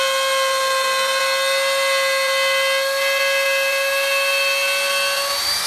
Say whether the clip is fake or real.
real